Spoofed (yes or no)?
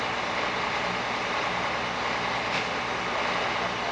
no